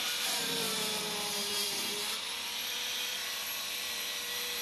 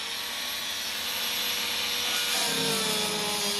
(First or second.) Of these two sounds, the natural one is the second